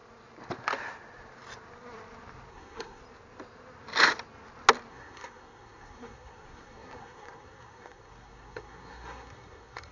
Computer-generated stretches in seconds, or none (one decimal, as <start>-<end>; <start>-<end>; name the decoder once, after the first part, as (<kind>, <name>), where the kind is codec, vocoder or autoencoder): 2.5-3.0 (codec, SNAC); 4.9-9.9